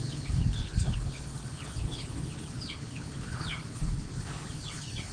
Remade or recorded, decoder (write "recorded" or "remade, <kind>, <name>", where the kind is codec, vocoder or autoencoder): remade, codec, HILCodec